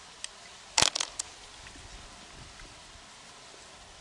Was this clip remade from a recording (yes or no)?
no